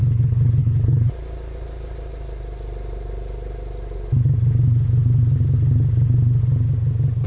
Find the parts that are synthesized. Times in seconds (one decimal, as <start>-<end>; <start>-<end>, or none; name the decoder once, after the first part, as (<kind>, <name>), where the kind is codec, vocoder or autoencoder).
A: 0.0-1.1 (codec, HILCodec)